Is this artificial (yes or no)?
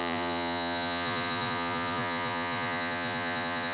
yes